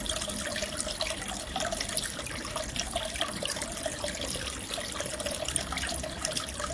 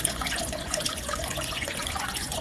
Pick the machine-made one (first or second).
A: second